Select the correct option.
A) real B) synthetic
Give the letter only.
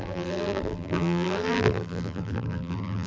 B